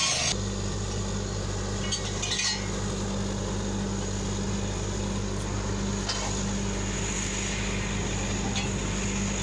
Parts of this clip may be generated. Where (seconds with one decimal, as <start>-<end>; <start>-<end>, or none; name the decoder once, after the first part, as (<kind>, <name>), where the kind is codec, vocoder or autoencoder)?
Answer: none